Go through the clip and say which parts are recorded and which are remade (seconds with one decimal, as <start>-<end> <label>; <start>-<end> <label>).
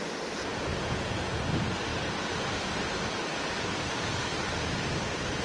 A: 0.0-0.7 recorded; 0.7-1.4 remade; 1.4-5.4 recorded